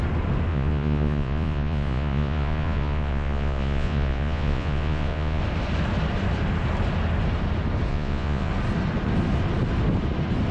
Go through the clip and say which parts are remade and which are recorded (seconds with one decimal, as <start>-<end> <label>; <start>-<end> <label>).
0.0-0.5 recorded; 0.5-5.4 remade; 5.4-7.9 recorded; 7.9-8.5 remade; 8.5-10.5 recorded

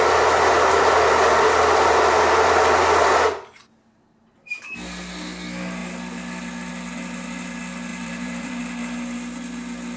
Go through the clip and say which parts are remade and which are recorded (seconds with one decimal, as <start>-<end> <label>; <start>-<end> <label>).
0.0-7.9 recorded; 7.9-8.6 remade; 8.6-10.0 recorded

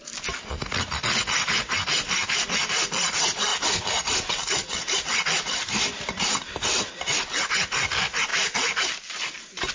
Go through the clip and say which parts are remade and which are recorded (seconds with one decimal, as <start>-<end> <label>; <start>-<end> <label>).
0.0-3.5 recorded; 3.5-6.5 remade; 6.5-8.3 recorded; 8.3-9.7 remade

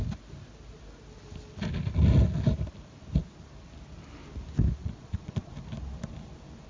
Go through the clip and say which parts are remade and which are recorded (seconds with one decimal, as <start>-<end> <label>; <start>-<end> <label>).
0.0-4.8 recorded; 4.8-5.5 remade; 5.5-6.7 recorded

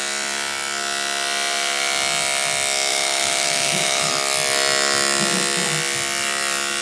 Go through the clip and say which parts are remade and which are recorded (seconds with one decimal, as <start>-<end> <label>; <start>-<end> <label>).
0.0-2.9 recorded; 2.9-4.1 remade; 4.1-6.8 recorded

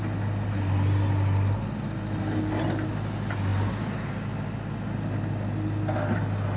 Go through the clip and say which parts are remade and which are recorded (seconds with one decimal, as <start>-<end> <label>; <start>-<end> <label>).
0.0-6.6 recorded